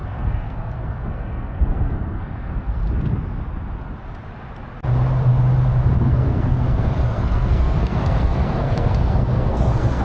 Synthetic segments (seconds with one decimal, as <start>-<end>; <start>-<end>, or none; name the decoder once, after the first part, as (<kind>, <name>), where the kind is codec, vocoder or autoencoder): 0.0-2.8 (codec, SNAC); 6.0-10.0